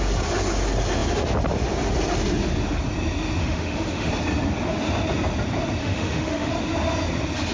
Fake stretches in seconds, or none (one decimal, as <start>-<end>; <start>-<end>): 3.4-4.1; 5.8-6.5